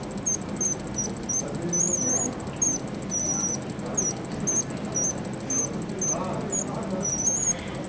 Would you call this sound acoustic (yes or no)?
yes